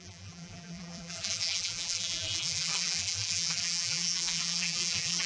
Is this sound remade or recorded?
remade